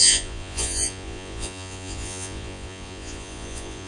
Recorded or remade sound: remade